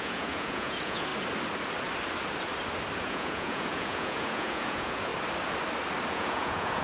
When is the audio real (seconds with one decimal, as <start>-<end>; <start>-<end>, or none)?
1.1-3.0; 5.1-6.1